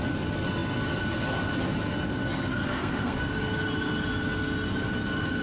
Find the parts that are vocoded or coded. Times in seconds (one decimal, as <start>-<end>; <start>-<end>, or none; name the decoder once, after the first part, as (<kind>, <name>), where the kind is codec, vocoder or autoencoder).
2.5-3.3 (codec, SNAC)